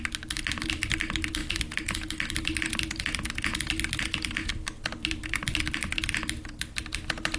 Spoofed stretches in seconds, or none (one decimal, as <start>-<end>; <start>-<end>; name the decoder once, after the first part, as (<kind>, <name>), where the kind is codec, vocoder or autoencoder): 1.4-2.3 (vocoder, BigVGAN v2); 4.5-5.6